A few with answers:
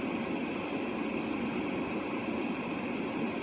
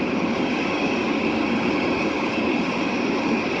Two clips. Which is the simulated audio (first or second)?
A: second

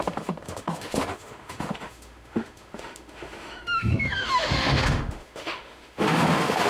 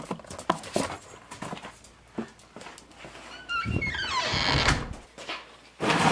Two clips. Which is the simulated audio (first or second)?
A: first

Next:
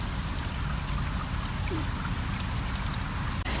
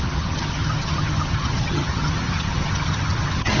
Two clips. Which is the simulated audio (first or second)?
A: second